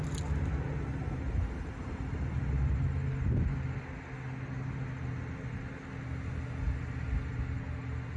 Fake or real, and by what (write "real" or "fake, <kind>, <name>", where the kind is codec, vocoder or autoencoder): real